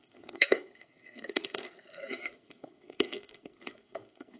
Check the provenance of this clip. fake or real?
fake